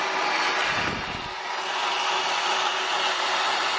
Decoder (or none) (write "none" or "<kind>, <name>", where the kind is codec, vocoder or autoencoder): none